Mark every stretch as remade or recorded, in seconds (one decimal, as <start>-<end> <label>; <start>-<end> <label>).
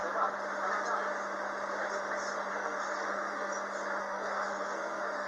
0.0-2.5 recorded; 2.5-3.5 remade; 3.5-4.0 recorded; 4.0-5.3 remade